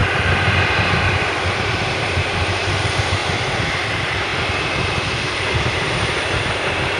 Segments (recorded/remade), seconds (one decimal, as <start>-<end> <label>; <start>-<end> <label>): 0.0-1.9 recorded; 1.9-3.2 remade; 3.2-3.9 recorded; 3.9-4.3 remade; 4.3-5.8 recorded; 5.8-7.0 remade